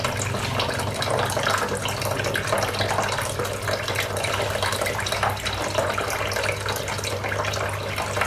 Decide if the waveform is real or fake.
real